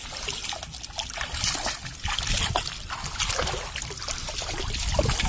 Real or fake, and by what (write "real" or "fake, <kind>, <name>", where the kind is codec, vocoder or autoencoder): real